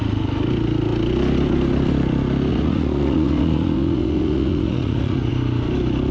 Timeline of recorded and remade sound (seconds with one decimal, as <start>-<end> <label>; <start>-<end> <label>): 0.0-2.5 recorded; 2.5-5.3 remade; 5.3-6.1 recorded